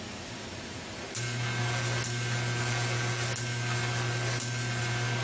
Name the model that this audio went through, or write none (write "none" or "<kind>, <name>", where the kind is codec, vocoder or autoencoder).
none